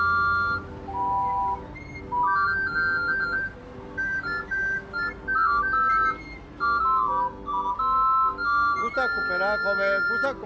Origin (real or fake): real